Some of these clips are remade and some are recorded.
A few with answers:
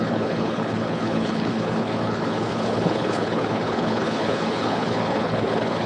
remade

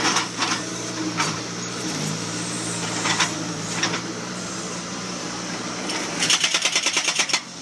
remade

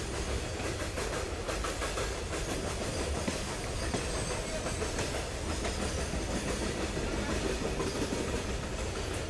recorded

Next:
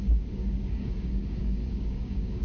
remade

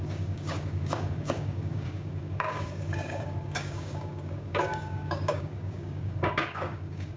remade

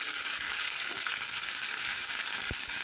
remade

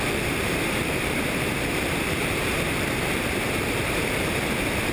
remade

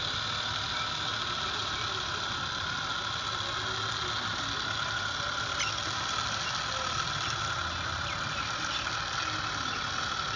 recorded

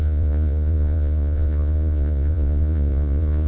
remade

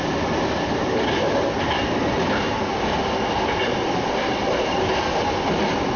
recorded